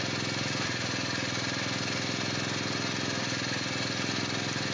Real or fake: real